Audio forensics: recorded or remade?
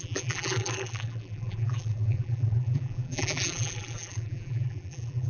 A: remade